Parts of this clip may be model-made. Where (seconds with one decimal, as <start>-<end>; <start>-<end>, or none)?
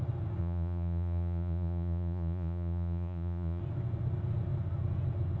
0.4-3.6